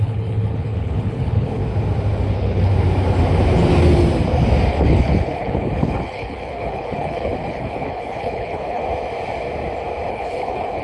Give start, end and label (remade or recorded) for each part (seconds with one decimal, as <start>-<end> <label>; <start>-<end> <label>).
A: 0.0-1.6 remade; 1.6-2.3 recorded; 2.3-2.7 remade; 2.7-4.7 recorded; 4.7-8.8 remade; 8.8-10.1 recorded; 10.1-10.8 remade